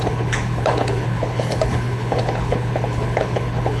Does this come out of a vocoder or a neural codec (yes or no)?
yes